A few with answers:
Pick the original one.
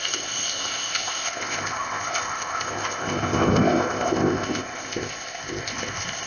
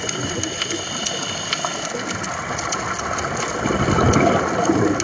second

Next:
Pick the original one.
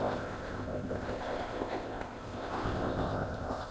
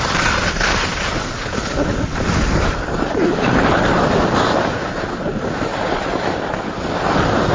second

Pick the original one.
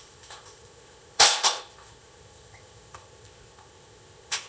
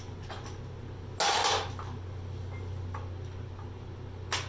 second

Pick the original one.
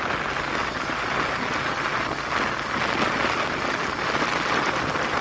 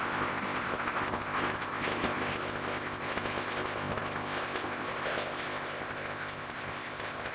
first